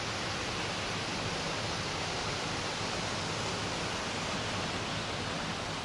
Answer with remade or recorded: recorded